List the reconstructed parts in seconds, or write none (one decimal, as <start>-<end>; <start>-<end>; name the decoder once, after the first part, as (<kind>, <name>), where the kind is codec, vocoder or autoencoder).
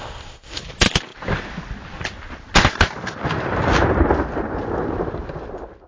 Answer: 0.0-0.6 (codec, ZipCodec)